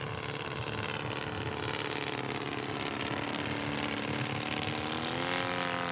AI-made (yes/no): no